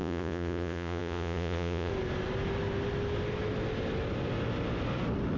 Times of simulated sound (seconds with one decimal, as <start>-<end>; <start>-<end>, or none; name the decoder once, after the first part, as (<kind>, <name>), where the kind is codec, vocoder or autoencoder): 0.0-1.9 (vocoder, Vocos)